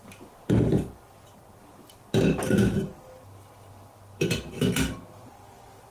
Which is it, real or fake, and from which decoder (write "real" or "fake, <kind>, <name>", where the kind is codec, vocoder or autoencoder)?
real